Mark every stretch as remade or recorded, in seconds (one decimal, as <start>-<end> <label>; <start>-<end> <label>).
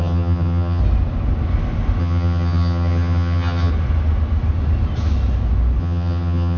0.0-0.8 remade; 0.8-2.0 recorded; 2.0-3.7 remade; 3.7-5.8 recorded; 5.8-6.6 remade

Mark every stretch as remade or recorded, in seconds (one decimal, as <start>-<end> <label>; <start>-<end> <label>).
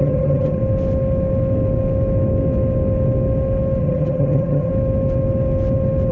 0.0-0.6 remade; 0.6-3.8 recorded; 3.8-4.7 remade; 4.7-6.1 recorded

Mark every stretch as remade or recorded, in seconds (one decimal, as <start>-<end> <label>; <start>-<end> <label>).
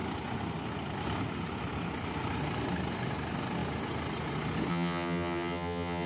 0.0-4.7 recorded; 4.7-6.1 remade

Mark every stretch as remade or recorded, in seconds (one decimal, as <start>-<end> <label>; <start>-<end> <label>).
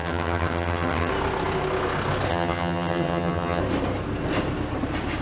0.0-1.1 remade; 1.1-2.3 recorded; 2.3-3.6 remade; 3.6-5.2 recorded